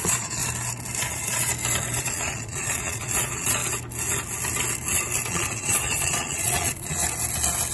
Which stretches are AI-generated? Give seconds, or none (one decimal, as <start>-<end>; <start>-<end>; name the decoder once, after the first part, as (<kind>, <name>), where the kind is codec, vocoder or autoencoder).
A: 0.0-0.4 (vocoder, Vocos); 1.0-1.5; 2.0-3.6; 5.3-7.0